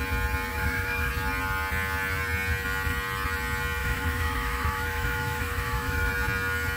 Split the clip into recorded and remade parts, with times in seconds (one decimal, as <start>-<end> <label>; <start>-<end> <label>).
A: 0.0-0.5 recorded; 0.5-1.1 remade; 1.1-3.8 recorded; 3.8-6.1 remade; 6.1-6.8 recorded